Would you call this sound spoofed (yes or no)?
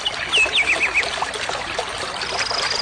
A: no